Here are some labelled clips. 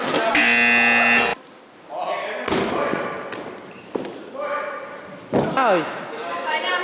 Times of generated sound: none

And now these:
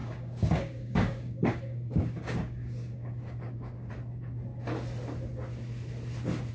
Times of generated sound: 0.0-3.9 (codec, DAC)

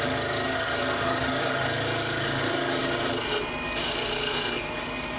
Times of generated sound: 0.0-2.8 (codec, DAC); 3.6-5.2

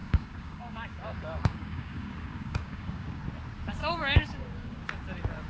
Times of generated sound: 0.0-3.2 (codec, DAC); 3.8-4.8